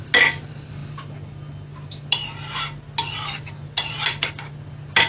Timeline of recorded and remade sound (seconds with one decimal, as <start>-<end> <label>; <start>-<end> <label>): 0.0-5.1 recorded

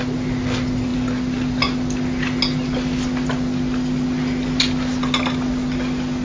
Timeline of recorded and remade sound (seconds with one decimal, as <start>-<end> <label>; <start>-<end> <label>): 0.0-6.2 recorded

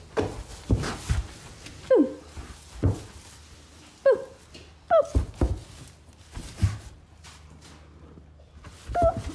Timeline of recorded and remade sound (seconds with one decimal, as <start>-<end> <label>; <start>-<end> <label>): 0.0-2.8 recorded; 2.8-3.8 remade; 3.8-9.3 recorded

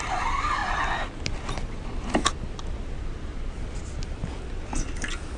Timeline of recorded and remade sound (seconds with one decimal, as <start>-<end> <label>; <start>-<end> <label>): 0.0-5.4 recorded

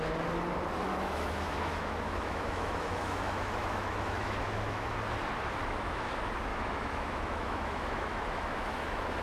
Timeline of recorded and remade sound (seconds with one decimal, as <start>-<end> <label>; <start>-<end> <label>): 0.0-0.9 recorded; 0.9-4.9 remade; 4.9-5.6 recorded; 5.6-6.1 remade; 6.1-6.5 recorded; 6.5-9.2 remade

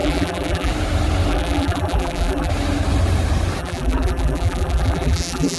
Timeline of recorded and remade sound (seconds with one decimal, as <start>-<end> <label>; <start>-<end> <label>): 0.0-0.7 remade; 0.7-1.3 recorded; 1.3-2.5 remade; 2.5-3.6 recorded; 3.6-5.6 remade

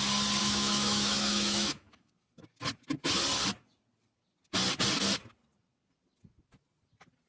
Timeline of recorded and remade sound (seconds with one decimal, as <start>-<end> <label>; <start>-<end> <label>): 0.0-0.4 recorded; 0.4-2.1 remade; 2.1-7.3 recorded

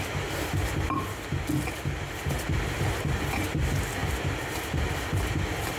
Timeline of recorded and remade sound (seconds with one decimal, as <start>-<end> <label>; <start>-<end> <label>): 0.0-5.8 recorded